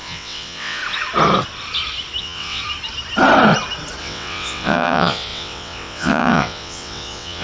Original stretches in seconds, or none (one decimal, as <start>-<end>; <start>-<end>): 0.8-2.2; 2.6-4.0

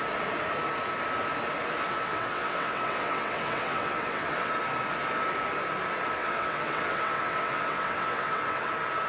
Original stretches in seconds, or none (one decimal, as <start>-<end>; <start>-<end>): 0.0-1.9; 4.5-6.2; 8.7-9.1